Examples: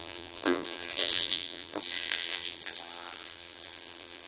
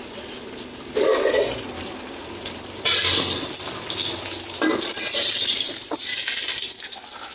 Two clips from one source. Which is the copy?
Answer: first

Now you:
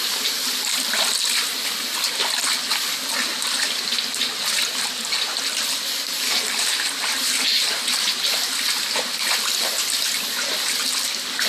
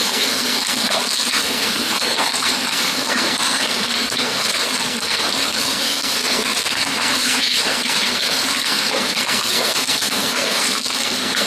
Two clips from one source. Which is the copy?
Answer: second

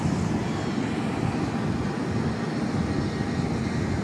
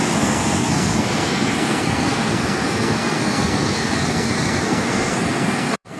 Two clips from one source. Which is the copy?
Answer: second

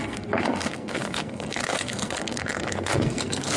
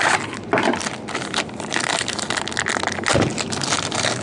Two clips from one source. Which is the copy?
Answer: first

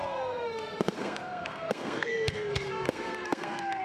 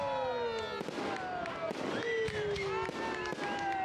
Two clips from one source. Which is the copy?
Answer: first